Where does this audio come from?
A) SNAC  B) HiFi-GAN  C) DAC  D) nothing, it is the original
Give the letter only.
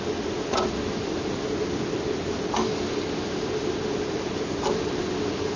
D